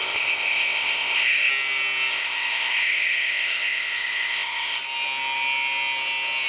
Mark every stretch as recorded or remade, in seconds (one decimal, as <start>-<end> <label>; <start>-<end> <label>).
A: 0.0-1.5 remade; 1.5-2.1 recorded; 2.1-4.8 remade; 4.8-6.5 recorded